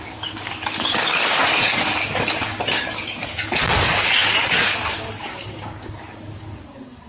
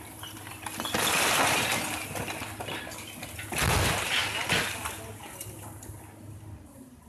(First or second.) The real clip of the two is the second